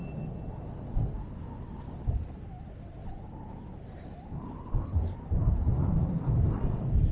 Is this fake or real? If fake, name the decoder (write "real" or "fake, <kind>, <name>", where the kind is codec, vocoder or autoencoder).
real